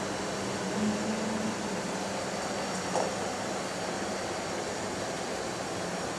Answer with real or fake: real